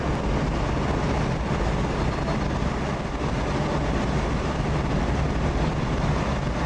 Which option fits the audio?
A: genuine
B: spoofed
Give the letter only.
A